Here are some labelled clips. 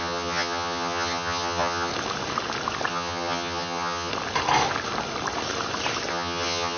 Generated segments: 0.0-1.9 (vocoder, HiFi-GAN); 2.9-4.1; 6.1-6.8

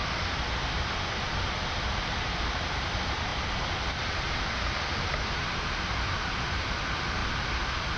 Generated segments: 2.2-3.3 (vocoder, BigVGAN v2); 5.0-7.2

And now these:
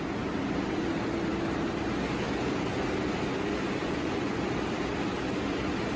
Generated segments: 3.8-4.4 (vocoder, Vocos)

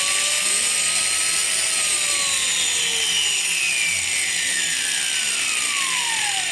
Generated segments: none